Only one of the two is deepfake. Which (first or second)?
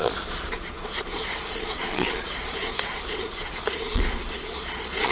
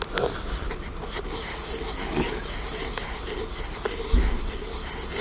first